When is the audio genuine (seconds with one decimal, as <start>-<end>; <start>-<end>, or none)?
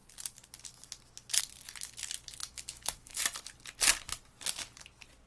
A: 0.0-2.4; 3.2-5.3